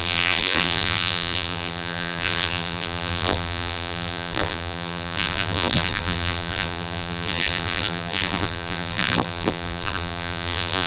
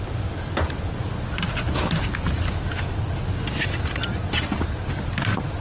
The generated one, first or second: first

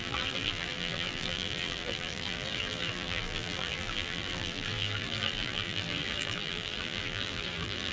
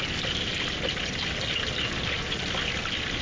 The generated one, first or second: first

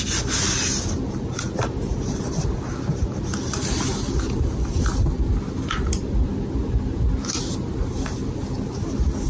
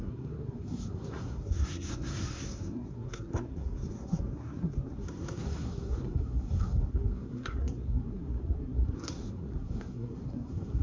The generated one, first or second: second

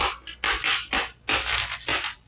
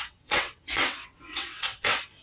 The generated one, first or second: second